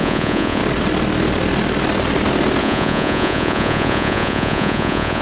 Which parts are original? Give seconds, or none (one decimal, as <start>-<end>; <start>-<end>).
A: 0.6-2.6